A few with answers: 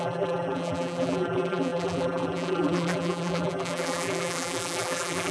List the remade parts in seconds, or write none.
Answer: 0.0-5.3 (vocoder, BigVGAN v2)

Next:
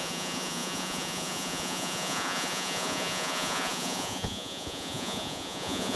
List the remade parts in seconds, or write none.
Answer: 0.0-6.0 (vocoder, Vocos)

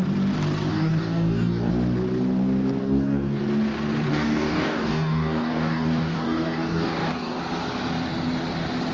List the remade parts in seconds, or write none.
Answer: 0.7-1.7 (codec, DAC); 2.8-3.4; 4.1-7.4

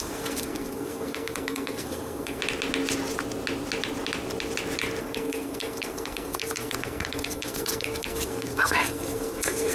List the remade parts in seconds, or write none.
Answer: 0.0-2.4 (codec, SNAC); 5.0-9.7

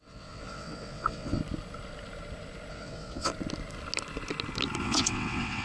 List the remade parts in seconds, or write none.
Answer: 0.0-1.4 (vocoder, WaveNeXt); 2.7-3.3; 4.8-5.6